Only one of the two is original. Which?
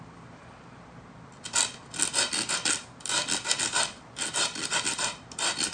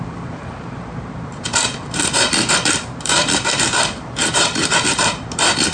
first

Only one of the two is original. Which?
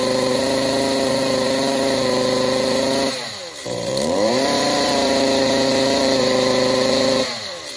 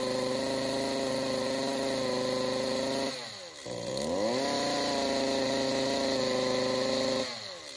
second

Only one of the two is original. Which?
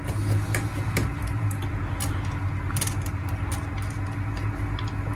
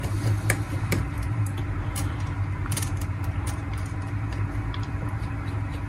first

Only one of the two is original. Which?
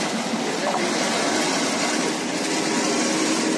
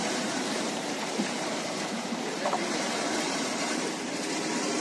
first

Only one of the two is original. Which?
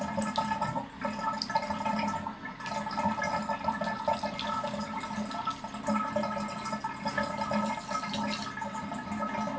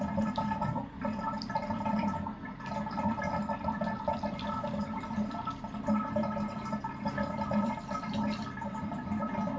first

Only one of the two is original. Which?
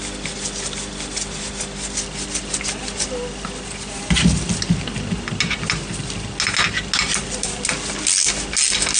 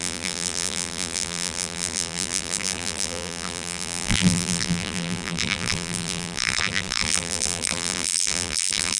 first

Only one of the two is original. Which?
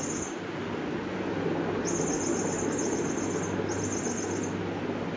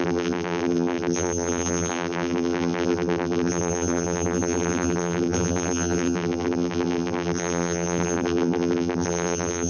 first